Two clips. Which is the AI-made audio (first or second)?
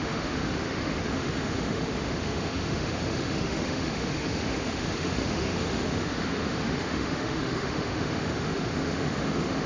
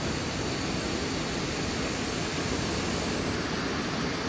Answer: first